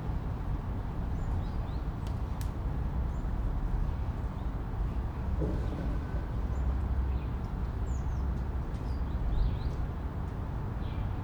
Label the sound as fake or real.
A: real